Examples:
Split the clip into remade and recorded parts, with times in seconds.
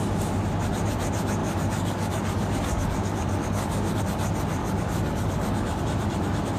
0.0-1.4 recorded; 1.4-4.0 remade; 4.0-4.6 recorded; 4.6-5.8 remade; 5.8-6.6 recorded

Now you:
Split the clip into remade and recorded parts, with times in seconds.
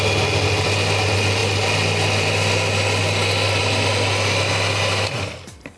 0.0-5.8 recorded